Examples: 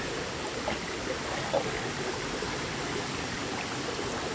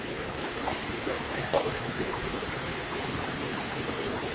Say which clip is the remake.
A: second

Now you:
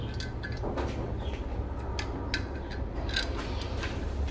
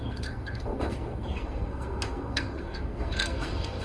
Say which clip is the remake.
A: second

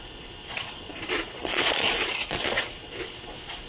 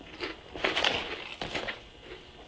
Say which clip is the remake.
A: first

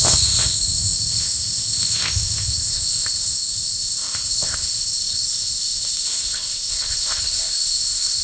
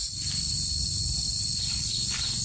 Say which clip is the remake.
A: first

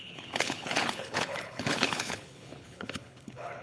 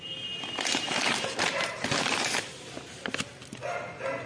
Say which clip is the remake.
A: first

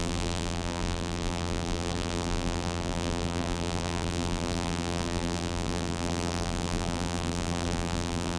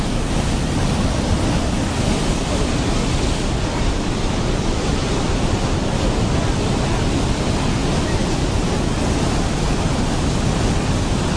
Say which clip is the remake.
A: first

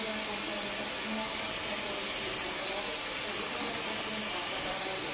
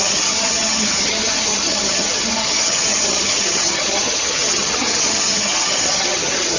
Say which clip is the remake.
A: second